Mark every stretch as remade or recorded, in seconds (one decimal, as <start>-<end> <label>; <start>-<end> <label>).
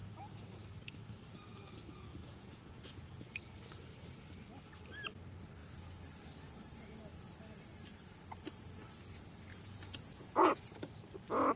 0.0-2.2 recorded; 2.2-3.0 remade; 3.0-9.5 recorded; 9.5-10.6 remade; 10.6-11.6 recorded